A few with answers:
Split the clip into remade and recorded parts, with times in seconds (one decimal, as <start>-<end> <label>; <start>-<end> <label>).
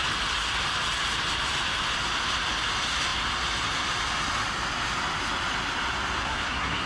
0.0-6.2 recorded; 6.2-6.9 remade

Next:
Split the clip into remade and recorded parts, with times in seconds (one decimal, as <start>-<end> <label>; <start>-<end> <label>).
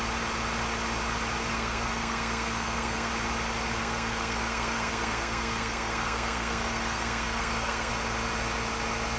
0.0-1.5 recorded; 1.5-3.1 remade; 3.1-3.8 recorded; 3.8-7.9 remade; 7.9-9.2 recorded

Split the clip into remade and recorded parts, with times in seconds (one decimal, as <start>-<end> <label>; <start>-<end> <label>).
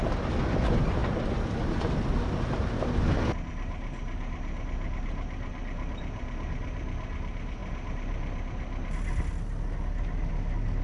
0.0-10.8 recorded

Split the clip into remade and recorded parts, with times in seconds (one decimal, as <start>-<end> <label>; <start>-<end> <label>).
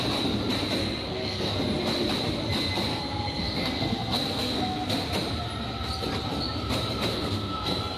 0.0-0.8 recorded; 0.8-1.5 remade; 1.5-2.9 recorded; 2.9-5.1 remade; 5.1-7.1 recorded; 7.1-8.0 remade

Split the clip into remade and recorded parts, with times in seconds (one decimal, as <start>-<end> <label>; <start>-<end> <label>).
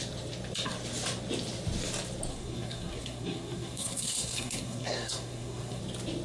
0.0-2.3 recorded; 2.3-5.8 remade; 5.8-6.2 recorded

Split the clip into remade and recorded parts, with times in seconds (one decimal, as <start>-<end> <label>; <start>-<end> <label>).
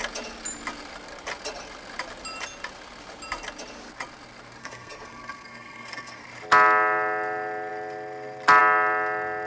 0.0-4.6 recorded; 4.6-6.2 remade; 6.2-9.5 recorded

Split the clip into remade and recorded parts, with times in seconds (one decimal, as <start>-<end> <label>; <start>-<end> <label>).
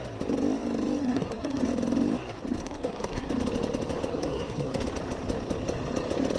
0.0-1.0 recorded; 1.0-1.6 remade; 1.6-2.6 recorded; 2.6-3.3 remade; 3.3-4.1 recorded; 4.1-4.8 remade; 4.8-6.4 recorded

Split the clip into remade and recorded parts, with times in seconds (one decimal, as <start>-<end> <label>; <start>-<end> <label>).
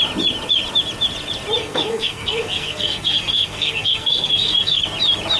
0.0-1.6 recorded; 1.6-4.8 remade; 4.8-5.4 recorded